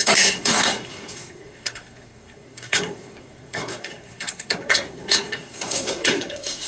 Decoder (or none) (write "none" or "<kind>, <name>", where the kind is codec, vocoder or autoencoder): codec, SNAC